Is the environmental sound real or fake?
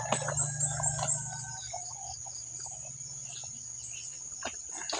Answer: real